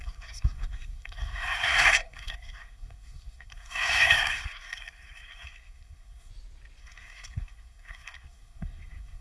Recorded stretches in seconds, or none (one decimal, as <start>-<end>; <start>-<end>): 6.3-6.8